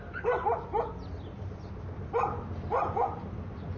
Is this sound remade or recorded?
recorded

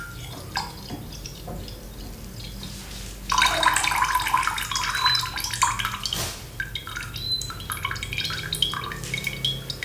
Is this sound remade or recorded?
recorded